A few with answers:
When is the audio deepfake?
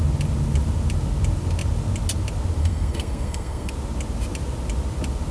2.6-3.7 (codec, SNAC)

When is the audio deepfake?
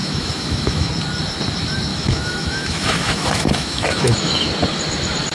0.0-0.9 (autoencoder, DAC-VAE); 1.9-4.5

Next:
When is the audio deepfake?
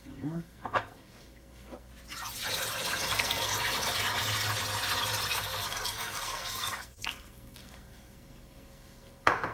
0.0-1.9 (codec, SNAC); 3.1-3.5; 5.3-9.5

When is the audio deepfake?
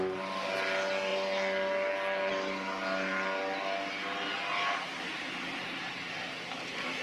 none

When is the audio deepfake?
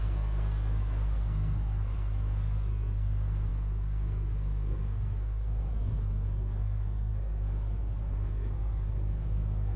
0.0-9.8 (codec, SNAC)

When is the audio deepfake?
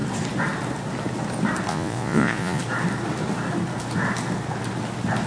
1.7-2.6 (vocoder, Vocos)